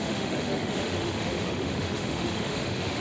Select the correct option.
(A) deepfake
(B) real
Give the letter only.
A